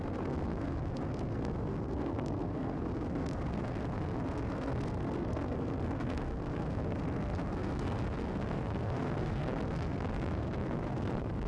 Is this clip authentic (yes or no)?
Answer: no